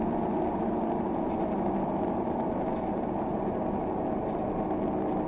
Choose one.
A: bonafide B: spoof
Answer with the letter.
A